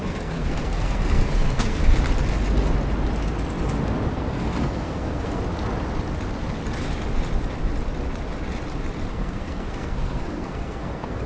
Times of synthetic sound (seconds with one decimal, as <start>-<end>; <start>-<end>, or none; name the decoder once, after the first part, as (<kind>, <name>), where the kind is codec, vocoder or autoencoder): 0.0-1.8 (codec, SNAC); 4.1-5.4; 9.1-11.3